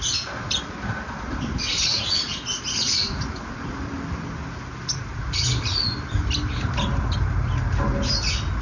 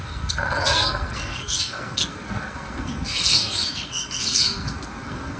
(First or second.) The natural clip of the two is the first